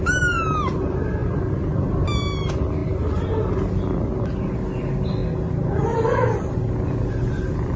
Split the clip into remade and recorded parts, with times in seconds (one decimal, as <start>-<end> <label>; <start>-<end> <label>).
0.0-7.8 recorded